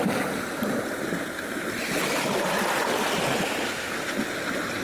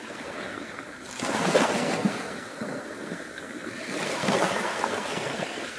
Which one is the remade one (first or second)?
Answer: second